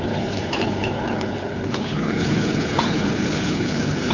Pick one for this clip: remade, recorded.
remade